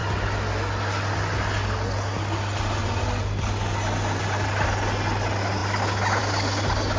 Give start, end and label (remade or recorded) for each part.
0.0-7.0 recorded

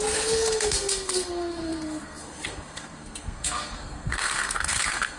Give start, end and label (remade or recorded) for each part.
0.0-5.2 remade

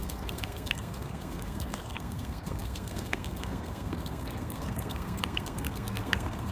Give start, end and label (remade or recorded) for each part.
0.0-6.5 remade

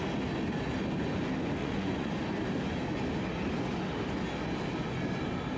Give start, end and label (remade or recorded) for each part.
0.0-1.6 recorded; 1.6-2.1 remade; 2.1-5.6 recorded

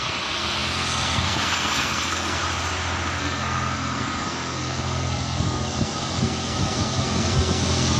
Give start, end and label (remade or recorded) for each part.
0.0-2.4 remade; 2.4-3.2 recorded; 3.2-8.0 remade